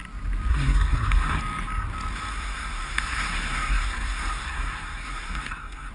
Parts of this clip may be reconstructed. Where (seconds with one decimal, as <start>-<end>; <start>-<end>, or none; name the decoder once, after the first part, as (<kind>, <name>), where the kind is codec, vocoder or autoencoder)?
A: 0.5-1.4 (codec, SNAC); 2.3-5.9